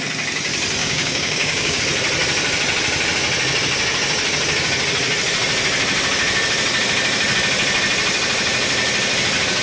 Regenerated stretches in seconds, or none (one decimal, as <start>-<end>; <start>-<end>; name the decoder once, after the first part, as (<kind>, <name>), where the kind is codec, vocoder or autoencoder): 0.8-1.8 (codec, DAC)

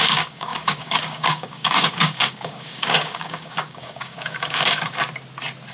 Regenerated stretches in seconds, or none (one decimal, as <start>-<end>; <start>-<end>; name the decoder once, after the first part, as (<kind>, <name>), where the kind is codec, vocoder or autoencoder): 0.0-5.0 (codec, DAC)

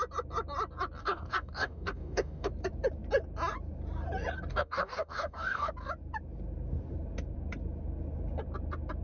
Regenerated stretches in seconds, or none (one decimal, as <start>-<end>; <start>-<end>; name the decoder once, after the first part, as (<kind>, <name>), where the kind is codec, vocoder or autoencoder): 1.0-2.5 (codec, DAC); 4.5-5.7

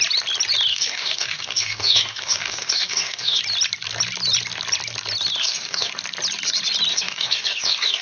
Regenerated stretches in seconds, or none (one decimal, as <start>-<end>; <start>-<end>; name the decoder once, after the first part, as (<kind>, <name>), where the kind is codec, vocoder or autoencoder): 0.7-3.4 (codec, DAC); 5.4-5.9; 6.9-8.0

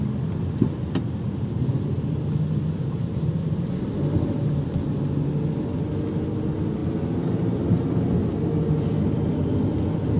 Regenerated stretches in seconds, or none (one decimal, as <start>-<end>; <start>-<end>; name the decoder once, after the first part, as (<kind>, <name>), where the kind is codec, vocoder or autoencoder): none

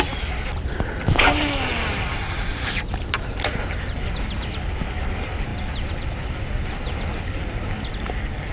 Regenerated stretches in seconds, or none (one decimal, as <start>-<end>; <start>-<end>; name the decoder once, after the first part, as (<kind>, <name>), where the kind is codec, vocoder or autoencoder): none

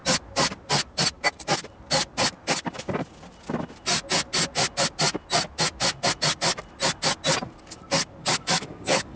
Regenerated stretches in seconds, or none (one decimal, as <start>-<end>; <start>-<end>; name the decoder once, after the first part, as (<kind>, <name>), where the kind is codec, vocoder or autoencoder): 8.2-9.2 (codec, DAC)